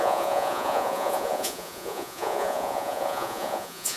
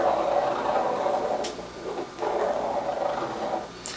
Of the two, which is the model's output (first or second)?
first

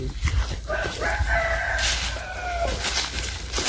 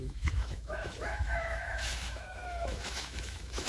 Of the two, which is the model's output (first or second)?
second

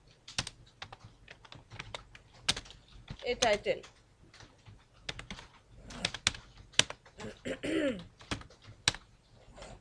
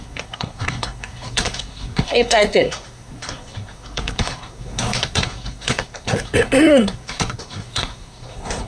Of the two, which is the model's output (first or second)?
second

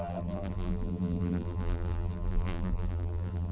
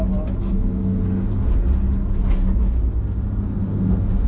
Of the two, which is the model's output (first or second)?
first